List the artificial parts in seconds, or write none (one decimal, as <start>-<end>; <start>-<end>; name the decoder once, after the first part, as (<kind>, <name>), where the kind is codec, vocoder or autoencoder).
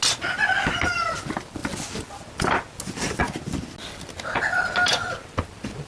none